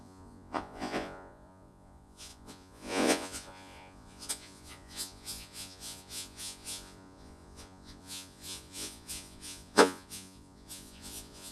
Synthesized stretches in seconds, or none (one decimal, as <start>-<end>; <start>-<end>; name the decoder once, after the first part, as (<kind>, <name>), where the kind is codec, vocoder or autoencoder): 0.0-11.5 (vocoder, Vocos)